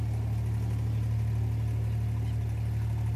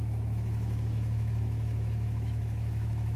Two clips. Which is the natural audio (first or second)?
first